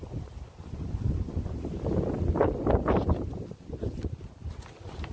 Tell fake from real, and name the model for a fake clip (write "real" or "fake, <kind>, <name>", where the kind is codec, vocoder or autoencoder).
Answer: real